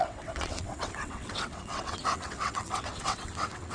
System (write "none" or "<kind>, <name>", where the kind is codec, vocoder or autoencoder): vocoder, WaveNeXt